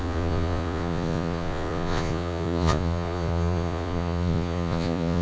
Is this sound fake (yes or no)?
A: yes